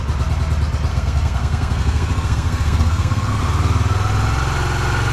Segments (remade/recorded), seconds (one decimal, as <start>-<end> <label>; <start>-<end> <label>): 0.0-0.9 recorded; 0.9-3.4 remade; 3.4-5.1 recorded